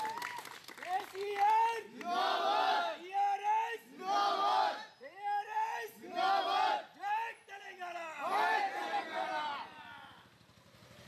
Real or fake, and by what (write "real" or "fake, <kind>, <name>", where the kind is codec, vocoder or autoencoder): real